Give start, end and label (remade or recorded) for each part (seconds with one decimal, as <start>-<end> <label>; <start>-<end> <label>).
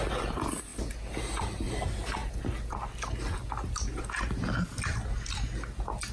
0.0-6.1 recorded